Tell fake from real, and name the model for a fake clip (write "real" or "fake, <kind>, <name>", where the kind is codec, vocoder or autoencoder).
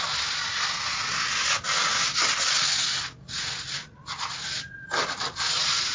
real